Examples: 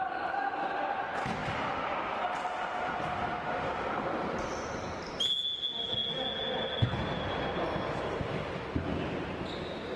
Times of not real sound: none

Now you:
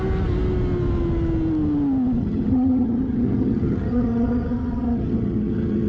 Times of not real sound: 2.2-5.9 (vocoder, HiFi-GAN)

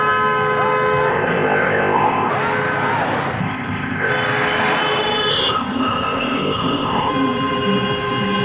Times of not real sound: 1.1-2.3 (codec, ZipCodec); 3.4-4.1; 5.3-7.1

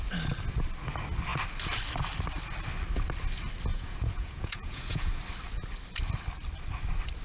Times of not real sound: 3.7-5.2 (vocoder, Vocos)

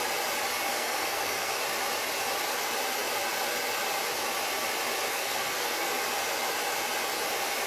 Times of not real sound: 0.7-1.6 (codec, SNAC); 5.1-6.0